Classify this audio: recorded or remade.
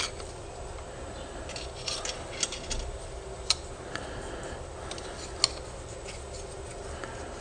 recorded